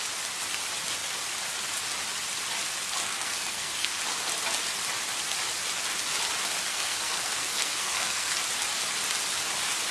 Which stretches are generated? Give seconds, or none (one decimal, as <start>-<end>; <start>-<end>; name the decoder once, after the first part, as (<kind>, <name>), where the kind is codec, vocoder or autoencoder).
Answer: 3.0-4.0 (codec, SNAC); 6.7-8.3